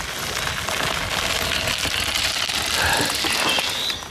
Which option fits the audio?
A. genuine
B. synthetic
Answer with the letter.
A